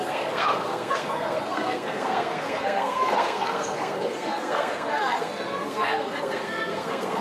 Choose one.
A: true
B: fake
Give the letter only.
B